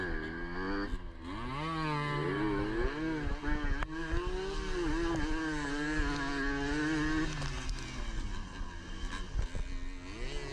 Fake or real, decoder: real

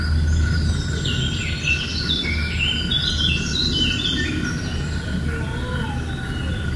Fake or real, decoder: real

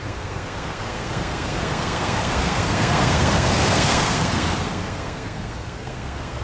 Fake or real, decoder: fake, codec, SNAC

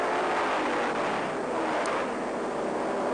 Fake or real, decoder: real